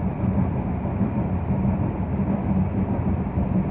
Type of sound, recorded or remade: recorded